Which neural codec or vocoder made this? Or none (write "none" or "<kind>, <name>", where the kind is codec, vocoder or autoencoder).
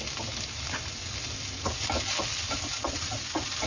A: none